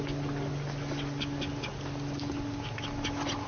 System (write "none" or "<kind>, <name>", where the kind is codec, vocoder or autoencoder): none